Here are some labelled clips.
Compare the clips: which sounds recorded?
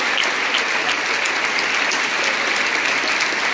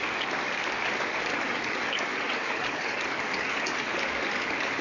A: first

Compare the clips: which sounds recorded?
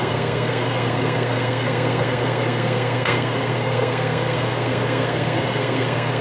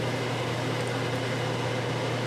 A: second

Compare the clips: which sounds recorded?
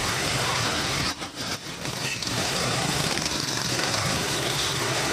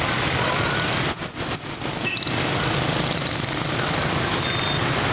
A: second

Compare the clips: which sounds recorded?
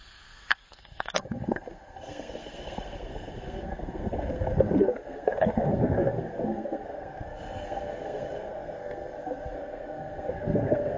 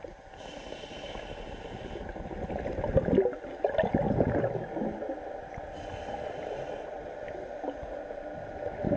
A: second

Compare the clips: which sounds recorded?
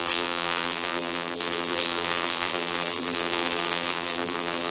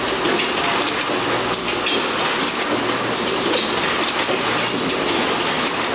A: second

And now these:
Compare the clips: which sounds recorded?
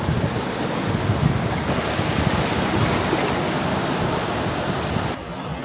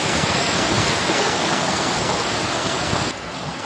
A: first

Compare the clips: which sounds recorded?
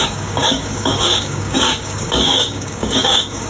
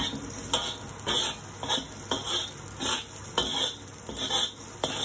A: second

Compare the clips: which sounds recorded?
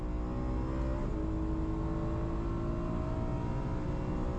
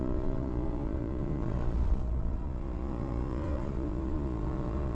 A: first